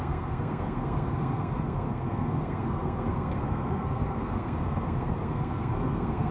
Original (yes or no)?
no